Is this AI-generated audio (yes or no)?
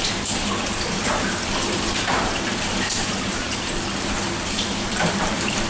yes